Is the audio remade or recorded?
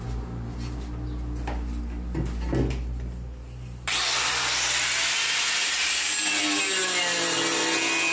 recorded